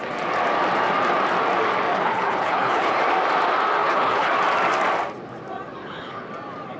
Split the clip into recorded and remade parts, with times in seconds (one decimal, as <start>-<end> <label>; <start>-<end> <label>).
0.0-1.9 recorded; 1.9-3.0 remade; 3.0-3.8 recorded; 3.8-4.3 remade; 4.3-5.8 recorded; 5.8-6.3 remade; 6.3-6.8 recorded